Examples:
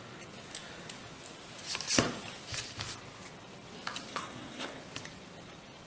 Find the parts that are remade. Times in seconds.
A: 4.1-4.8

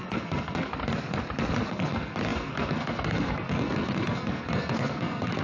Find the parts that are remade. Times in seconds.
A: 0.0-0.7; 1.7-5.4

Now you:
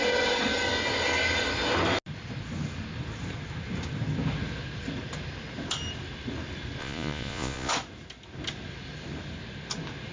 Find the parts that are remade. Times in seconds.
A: 6.8-7.7

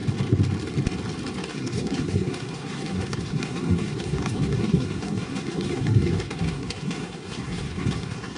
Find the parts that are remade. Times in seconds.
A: 1.5-8.4

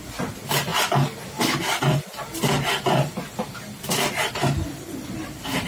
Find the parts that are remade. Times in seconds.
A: none